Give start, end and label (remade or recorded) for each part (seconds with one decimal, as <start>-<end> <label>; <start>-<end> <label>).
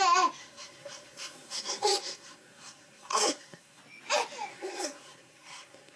0.0-0.4 recorded; 0.4-3.8 remade; 3.8-4.5 recorded; 4.5-6.0 remade